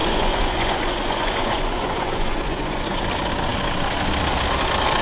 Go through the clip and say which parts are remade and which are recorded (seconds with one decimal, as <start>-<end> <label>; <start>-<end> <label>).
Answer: 0.0-3.0 remade; 3.0-5.0 recorded